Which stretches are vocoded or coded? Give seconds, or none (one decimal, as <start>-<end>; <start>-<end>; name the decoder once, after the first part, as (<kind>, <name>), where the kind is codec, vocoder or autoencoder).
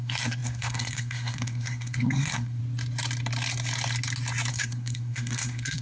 0.0-2.6 (codec, SNAC); 4.5-5.8